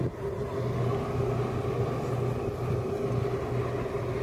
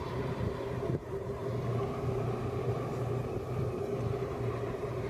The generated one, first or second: second